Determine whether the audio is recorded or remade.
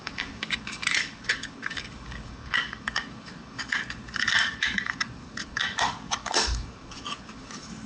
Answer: remade